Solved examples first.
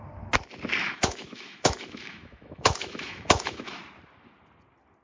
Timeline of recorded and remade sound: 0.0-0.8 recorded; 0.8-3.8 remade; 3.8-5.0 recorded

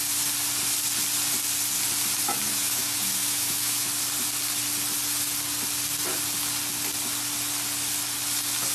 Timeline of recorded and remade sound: 0.0-2.5 recorded; 2.5-3.9 remade; 3.9-8.7 recorded

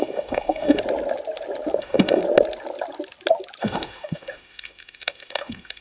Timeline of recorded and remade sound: 0.0-0.8 remade; 0.8-1.8 recorded; 1.8-2.2 remade; 2.2-3.6 recorded; 3.6-5.8 remade

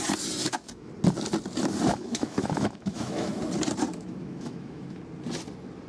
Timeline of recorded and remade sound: 0.0-0.4 recorded; 0.4-0.9 remade; 0.9-1.9 recorded; 1.9-3.4 remade; 3.4-3.9 recorded; 3.9-5.0 remade; 5.0-5.9 recorded

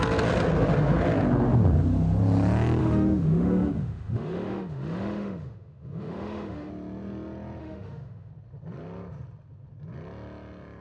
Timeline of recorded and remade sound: 0.0-2.8 recorded; 2.8-6.7 remade; 6.7-7.6 recorded; 7.6-8.3 remade; 8.3-10.8 recorded

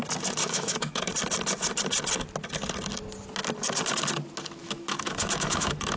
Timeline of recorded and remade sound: 0.0-0.4 recorded; 0.4-1.1 remade; 1.1-4.6 recorded; 4.6-6.0 remade

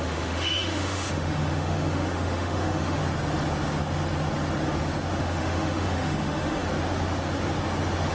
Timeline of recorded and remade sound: 0.0-3.0 remade; 3.0-5.2 recorded; 5.2-6.7 remade; 6.7-8.1 recorded